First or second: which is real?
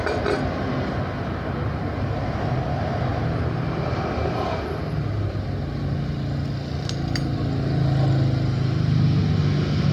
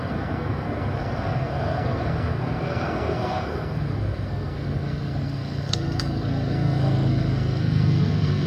first